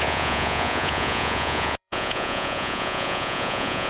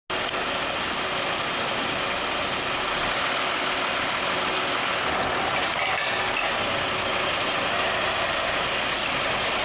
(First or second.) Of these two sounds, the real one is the second